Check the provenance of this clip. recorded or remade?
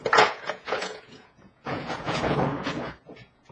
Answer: remade